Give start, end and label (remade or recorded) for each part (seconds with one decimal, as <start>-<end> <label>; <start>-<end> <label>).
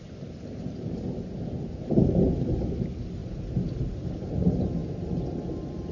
0.0-5.9 recorded